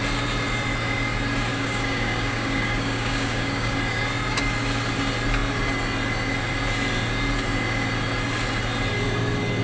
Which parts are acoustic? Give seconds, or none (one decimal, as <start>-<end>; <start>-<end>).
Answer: 0.0-1.5; 3.8-9.6